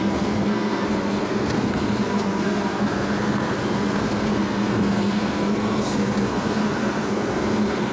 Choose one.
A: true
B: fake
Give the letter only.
B